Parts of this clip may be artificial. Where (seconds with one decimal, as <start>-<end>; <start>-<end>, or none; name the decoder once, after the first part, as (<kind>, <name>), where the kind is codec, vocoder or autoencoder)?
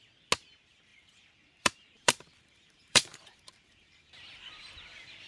0.9-4.1 (vocoder, BigVGAN v2)